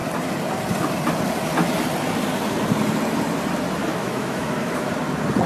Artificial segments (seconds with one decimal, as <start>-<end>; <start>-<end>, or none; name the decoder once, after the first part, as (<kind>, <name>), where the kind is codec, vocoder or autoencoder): 3.8-4.9 (autoencoder, DAC-VAE)